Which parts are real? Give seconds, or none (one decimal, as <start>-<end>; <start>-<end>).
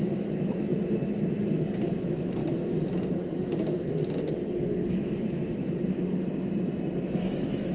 0.7-2.0; 2.4-7.0